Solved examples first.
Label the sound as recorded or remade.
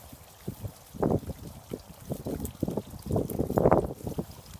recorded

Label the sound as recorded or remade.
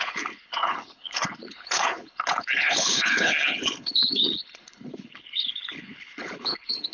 remade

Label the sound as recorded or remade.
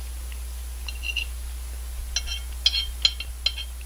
recorded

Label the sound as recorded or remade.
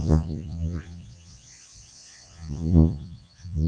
remade